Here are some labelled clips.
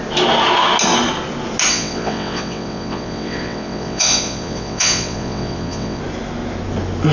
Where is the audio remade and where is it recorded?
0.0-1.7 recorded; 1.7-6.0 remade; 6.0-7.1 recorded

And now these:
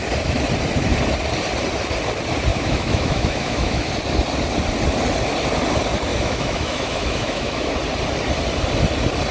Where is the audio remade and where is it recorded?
0.0-2.5 recorded; 2.5-3.9 remade; 3.9-6.1 recorded; 6.1-7.7 remade; 7.7-9.3 recorded

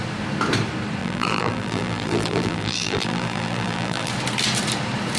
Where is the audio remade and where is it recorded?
0.0-1.0 recorded; 1.0-4.1 remade; 4.1-5.2 recorded

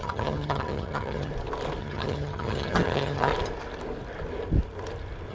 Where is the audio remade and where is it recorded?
0.0-1.3 remade; 1.3-1.8 recorded; 1.8-3.3 remade; 3.3-5.3 recorded

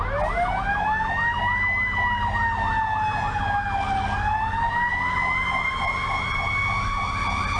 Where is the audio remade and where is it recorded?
0.0-7.6 recorded

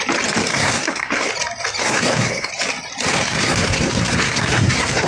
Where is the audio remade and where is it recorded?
0.0-0.5 recorded; 0.5-1.3 remade; 1.3-1.8 recorded; 1.8-2.5 remade; 2.5-3.1 recorded; 3.1-5.1 remade

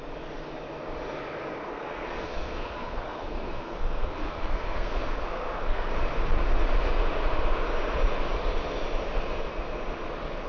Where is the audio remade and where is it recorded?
0.0-1.7 recorded; 1.7-5.9 remade; 5.9-10.5 recorded

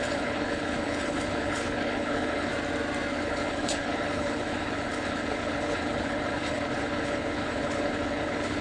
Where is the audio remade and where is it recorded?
0.0-2.5 remade; 2.5-3.1 recorded; 3.1-8.6 remade